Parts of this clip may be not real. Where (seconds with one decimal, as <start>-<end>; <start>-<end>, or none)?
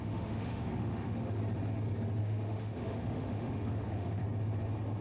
0.0-1.4; 2.2-4.2